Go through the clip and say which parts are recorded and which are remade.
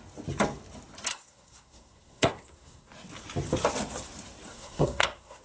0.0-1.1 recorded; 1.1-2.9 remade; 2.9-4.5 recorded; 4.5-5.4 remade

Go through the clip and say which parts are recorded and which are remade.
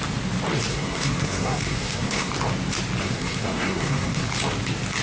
0.0-0.7 recorded; 0.7-2.3 remade; 2.3-3.0 recorded; 3.0-4.2 remade; 4.2-5.0 recorded